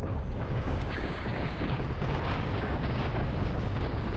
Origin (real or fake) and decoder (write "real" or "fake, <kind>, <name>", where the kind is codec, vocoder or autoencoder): fake, codec, DAC